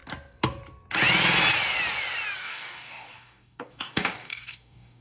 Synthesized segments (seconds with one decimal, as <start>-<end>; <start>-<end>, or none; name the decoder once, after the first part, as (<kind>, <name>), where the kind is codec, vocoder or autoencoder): 2.4-5.0 (codec, DAC)